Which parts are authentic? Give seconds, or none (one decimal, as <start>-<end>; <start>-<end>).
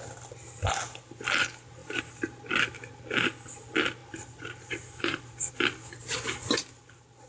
0.0-1.8; 2.5-4.0; 5.5-7.3